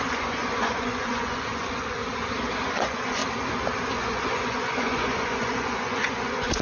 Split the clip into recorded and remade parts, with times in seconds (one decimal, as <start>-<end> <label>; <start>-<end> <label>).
0.0-2.0 remade; 2.0-2.7 recorded; 2.7-3.2 remade; 3.2-3.9 recorded; 3.9-6.6 remade